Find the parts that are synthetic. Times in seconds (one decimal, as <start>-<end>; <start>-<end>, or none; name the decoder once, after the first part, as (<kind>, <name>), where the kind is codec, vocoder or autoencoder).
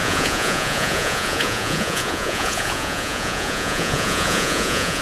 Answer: 0.0-5.0 (vocoder, Vocos)